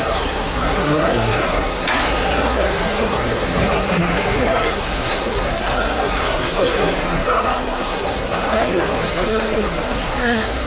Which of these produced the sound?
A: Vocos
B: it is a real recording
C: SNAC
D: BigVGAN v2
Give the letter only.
C